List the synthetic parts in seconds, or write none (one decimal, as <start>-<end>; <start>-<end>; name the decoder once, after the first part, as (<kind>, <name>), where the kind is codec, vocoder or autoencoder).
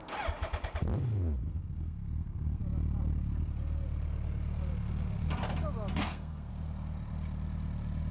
1.5-2.6 (codec, SNAC); 6.0-6.5